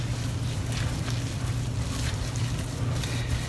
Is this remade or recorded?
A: recorded